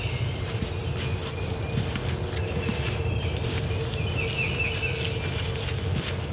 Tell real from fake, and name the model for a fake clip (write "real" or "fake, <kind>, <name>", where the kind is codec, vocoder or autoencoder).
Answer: real